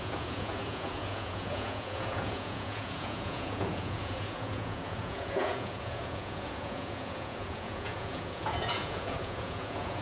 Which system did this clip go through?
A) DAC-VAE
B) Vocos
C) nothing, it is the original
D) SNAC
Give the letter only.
B